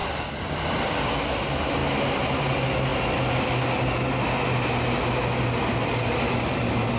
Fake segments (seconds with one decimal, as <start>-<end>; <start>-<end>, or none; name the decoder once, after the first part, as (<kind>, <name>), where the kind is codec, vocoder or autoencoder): 0.0-0.8 (vocoder, BigVGAN v2); 1.8-2.4